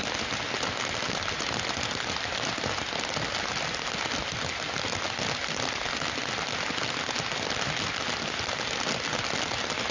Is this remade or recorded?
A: recorded